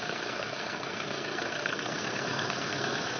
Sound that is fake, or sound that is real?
fake